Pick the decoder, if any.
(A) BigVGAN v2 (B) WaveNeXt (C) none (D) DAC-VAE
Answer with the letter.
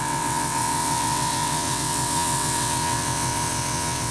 B